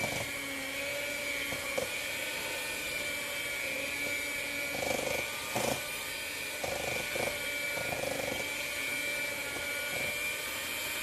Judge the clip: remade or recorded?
recorded